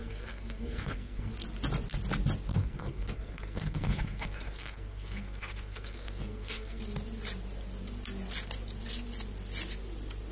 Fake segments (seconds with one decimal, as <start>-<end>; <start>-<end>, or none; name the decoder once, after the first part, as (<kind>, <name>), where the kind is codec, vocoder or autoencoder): 0.0-1.3 (codec, SNAC); 2.5-6.8